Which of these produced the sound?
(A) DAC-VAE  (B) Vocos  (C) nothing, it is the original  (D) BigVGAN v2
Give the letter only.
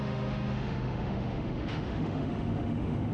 A